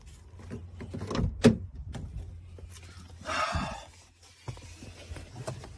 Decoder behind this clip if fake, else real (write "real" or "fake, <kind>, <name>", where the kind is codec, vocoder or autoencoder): real